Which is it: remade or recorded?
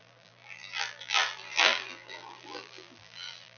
remade